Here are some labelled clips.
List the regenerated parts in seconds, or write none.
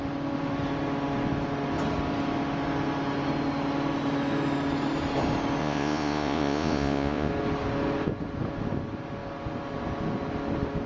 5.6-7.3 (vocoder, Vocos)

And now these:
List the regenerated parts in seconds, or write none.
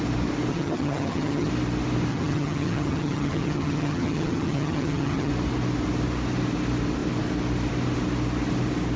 0.5-1.5 (vocoder, HiFi-GAN); 2.1-5.3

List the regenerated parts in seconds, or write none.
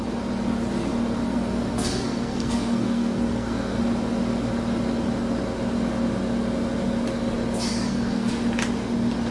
1.2-3.8 (codec, SNAC); 7.7-8.3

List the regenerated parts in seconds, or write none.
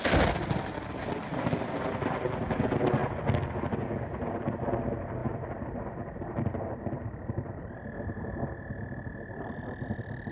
none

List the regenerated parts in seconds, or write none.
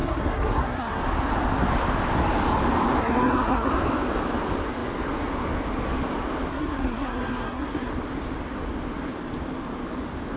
0.0-1.0 (codec, SNAC); 3.0-3.7; 6.5-7.9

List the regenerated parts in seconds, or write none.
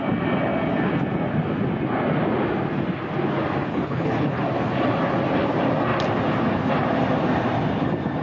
3.7-4.4 (codec, HILCodec)